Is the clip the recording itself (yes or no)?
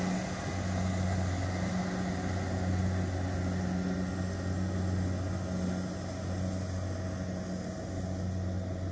yes